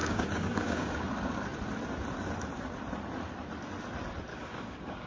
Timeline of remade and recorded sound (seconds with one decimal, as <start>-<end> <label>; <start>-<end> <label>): 0.0-1.0 remade; 1.0-4.3 recorded; 4.3-5.1 remade